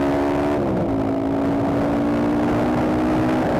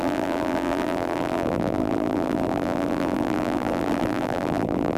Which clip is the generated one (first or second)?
second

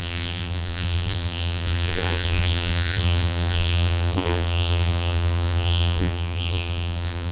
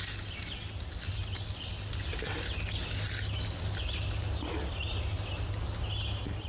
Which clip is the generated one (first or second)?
first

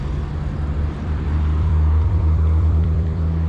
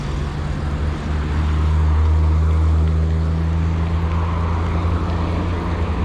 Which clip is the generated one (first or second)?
first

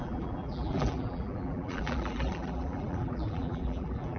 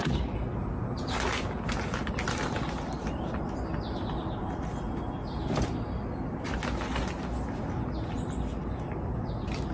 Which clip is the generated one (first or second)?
first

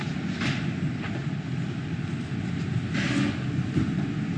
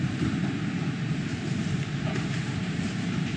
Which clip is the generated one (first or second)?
second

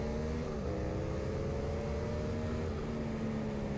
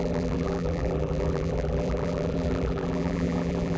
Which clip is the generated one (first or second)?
second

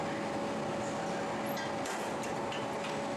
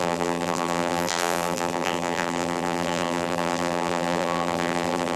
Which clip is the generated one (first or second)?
second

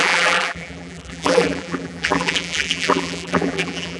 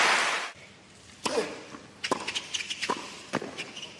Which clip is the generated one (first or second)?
first